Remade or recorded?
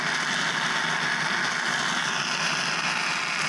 recorded